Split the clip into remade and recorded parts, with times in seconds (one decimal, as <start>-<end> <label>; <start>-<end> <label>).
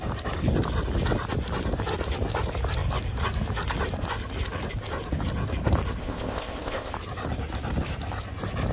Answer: 0.0-6.0 recorded; 6.0-6.9 remade; 6.9-8.7 recorded